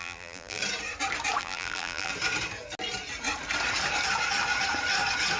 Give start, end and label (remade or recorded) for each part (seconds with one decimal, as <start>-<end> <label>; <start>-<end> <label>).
0.0-0.6 remade; 0.6-1.4 recorded; 1.4-2.1 remade; 2.1-5.4 recorded